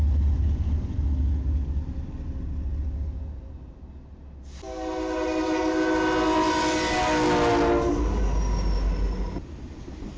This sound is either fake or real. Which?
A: real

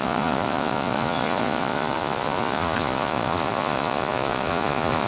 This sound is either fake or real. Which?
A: fake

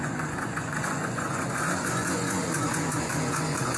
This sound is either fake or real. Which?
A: fake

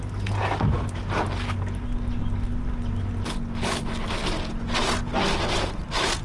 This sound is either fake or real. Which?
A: real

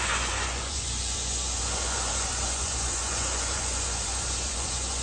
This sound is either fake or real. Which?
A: fake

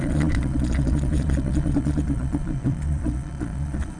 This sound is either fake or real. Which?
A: fake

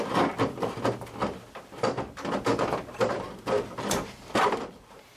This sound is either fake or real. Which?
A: real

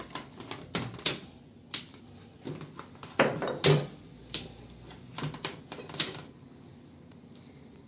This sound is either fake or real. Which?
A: real